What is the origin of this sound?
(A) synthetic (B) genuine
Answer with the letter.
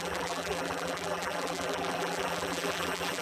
A